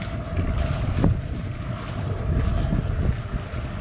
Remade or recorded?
recorded